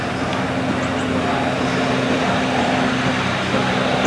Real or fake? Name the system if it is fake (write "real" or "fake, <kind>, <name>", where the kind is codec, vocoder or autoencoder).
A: real